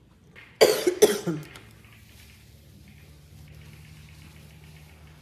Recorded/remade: recorded